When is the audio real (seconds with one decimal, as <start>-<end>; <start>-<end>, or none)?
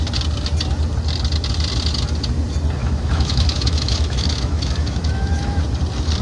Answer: 0.0-2.8; 5.6-6.2